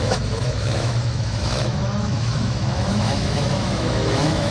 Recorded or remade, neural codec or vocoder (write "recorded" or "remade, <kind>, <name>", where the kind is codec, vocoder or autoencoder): remade, autoencoder, DAC-VAE